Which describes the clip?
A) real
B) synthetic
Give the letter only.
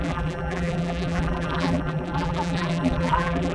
B